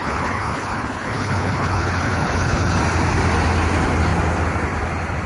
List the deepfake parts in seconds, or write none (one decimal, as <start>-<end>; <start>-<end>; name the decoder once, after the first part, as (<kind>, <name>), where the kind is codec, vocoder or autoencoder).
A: 0.0-2.8 (codec, HILCodec)